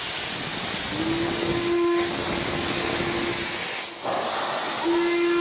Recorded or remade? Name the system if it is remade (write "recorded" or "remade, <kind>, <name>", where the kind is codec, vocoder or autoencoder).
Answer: recorded